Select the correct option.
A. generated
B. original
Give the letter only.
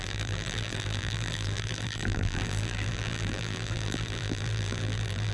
A